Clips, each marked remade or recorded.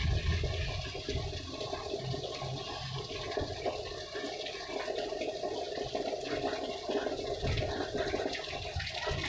recorded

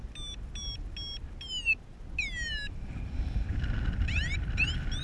recorded